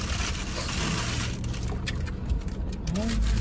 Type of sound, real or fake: real